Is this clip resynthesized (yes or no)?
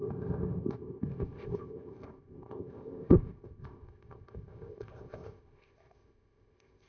yes